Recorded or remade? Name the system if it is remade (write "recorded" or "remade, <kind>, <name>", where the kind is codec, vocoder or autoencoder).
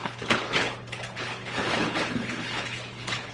remade, codec, HILCodec